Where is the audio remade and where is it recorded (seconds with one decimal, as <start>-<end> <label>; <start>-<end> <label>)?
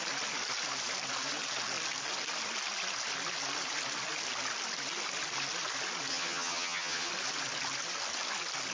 0.0-6.1 recorded; 6.1-7.1 remade; 7.1-8.7 recorded